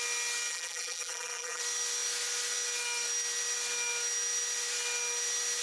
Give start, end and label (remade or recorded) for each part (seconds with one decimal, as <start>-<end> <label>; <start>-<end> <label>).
0.0-0.5 recorded; 0.5-1.6 remade; 1.6-5.6 recorded